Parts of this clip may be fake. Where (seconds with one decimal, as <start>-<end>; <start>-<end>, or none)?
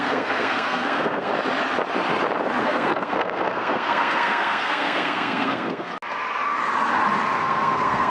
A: 0.0-1.3; 2.6-5.9; 7.4-8.1